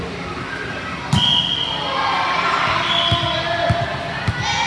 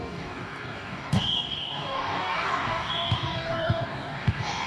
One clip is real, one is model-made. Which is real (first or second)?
first